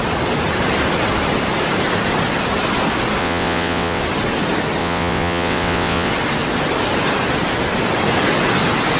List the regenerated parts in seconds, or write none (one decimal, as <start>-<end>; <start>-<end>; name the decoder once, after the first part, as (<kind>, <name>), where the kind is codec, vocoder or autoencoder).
3.2-4.0 (vocoder, WaveNeXt); 4.8-6.1